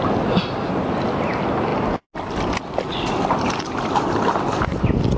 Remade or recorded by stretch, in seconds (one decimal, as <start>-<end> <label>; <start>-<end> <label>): 0.0-5.2 recorded